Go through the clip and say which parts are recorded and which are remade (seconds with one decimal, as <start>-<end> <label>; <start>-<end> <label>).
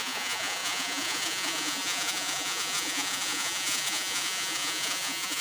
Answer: 0.0-5.4 remade